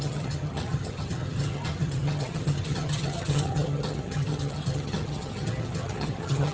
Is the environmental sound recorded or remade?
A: remade